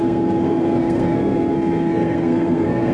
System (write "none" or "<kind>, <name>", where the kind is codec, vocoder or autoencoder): codec, SNAC